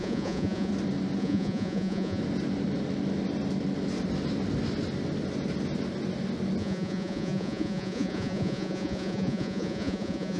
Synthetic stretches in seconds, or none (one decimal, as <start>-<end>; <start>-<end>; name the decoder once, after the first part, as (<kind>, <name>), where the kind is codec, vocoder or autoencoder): 0.0-0.7 (vocoder, Vocos); 1.2-2.2; 6.6-10.4